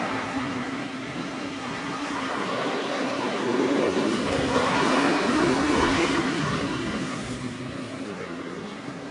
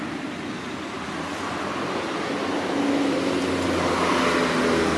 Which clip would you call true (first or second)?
second